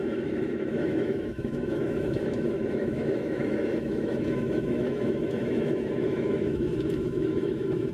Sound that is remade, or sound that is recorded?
remade